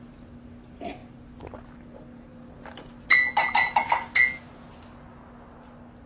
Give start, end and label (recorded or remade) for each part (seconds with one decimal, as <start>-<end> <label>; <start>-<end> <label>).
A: 0.0-6.1 recorded